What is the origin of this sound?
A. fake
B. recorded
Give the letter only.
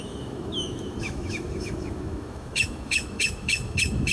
A